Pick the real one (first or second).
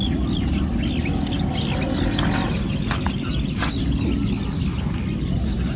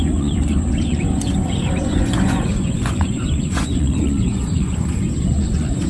first